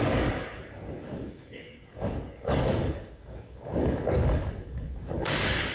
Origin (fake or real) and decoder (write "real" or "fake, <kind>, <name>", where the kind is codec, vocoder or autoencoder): fake, codec, DAC